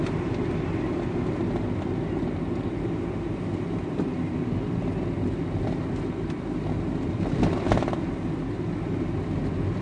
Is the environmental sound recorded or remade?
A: recorded